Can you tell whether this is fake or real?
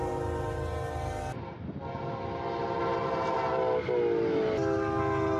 real